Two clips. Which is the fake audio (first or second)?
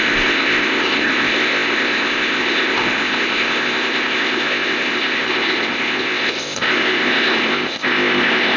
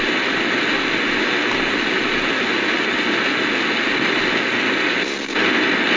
first